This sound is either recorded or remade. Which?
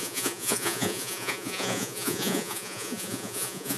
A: remade